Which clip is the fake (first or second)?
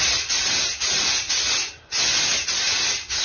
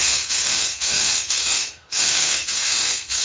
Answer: second